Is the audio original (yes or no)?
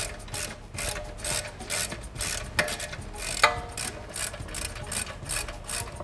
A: yes